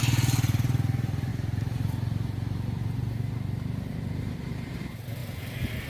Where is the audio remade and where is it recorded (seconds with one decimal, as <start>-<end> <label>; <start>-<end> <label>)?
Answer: 0.0-1.3 recorded; 1.3-4.8 remade; 4.8-5.2 recorded; 5.2-5.9 remade